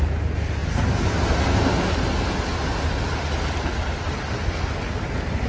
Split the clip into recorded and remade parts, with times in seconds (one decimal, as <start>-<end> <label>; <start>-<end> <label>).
0.0-5.5 recorded